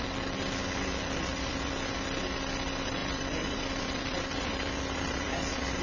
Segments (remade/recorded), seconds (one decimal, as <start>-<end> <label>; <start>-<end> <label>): 0.0-1.3 recorded; 1.3-1.9 remade; 1.9-3.0 recorded; 3.0-5.8 remade